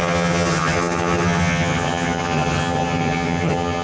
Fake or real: fake